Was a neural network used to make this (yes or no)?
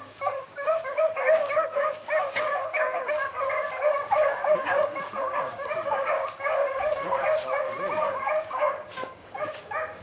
yes